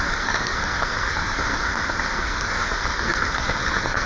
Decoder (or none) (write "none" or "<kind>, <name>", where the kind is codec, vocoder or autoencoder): codec, SNAC